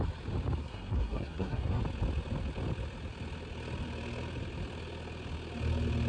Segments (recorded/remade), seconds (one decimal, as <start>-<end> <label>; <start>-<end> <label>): 0.0-0.6 recorded; 0.6-1.8 remade; 1.8-6.1 recorded